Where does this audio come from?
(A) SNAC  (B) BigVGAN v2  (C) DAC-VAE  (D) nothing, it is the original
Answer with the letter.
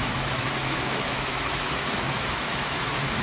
C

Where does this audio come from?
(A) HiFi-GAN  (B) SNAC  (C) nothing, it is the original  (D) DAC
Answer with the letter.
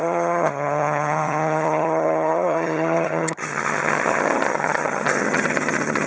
A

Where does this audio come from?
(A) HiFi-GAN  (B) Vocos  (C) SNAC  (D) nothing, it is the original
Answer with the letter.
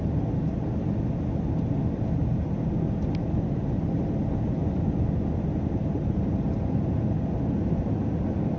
D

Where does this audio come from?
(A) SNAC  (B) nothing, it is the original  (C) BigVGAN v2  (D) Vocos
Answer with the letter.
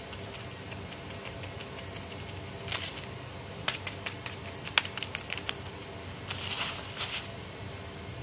B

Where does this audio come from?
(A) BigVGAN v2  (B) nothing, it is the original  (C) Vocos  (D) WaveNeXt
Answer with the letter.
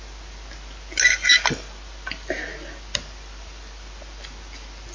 B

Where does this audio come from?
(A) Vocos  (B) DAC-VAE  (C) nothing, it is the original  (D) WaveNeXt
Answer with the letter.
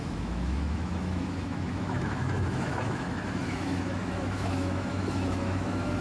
B